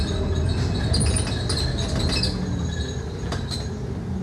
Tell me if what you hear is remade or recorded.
recorded